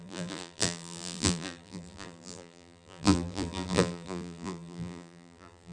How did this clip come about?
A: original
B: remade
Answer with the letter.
B